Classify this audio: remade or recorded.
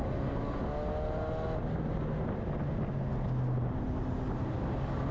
recorded